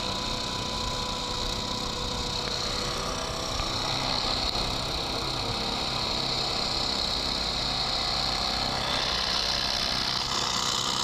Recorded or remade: recorded